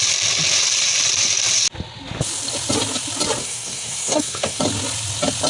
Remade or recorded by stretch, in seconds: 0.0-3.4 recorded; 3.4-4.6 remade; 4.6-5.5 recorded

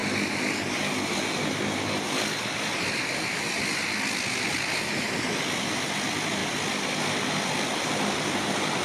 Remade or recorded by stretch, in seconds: 0.0-8.8 recorded

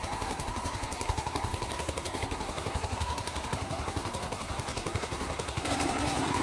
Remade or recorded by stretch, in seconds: 0.0-6.4 remade

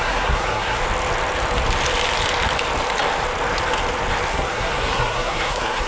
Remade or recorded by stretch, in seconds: 0.0-0.8 remade; 0.8-4.3 recorded; 4.3-5.9 remade